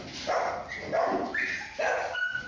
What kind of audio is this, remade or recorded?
recorded